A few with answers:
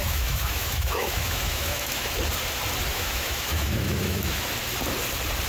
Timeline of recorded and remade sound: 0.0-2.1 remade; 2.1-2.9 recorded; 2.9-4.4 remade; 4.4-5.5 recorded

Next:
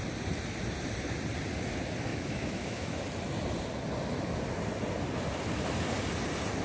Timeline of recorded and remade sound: 0.0-2.1 recorded; 2.1-3.0 remade; 3.0-6.6 recorded

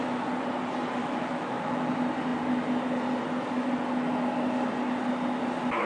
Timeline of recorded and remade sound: 0.0-1.0 recorded; 1.0-1.9 remade; 1.9-5.9 recorded